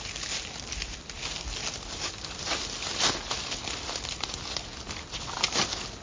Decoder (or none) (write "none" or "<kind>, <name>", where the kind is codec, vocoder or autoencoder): none